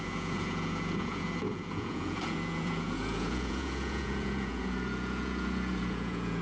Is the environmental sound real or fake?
fake